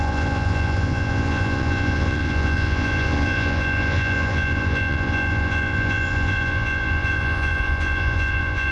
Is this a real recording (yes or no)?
no